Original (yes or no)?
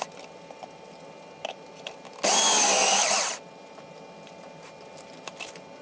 yes